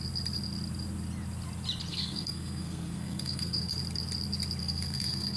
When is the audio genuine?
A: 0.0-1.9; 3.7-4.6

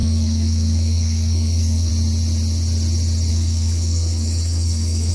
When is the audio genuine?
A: 1.9-3.3

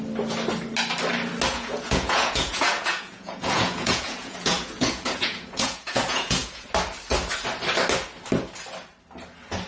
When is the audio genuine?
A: 0.0-1.5; 6.7-9.7

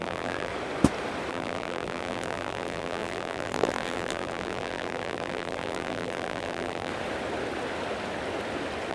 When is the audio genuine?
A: 0.5-1.3; 6.9-8.9

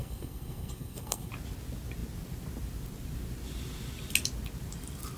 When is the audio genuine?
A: 1.3-5.2

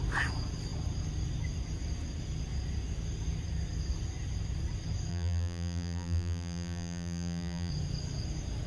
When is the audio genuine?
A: 0.0-5.1; 7.7-8.7